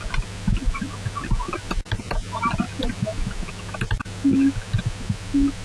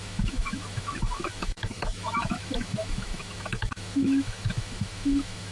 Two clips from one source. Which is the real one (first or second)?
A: first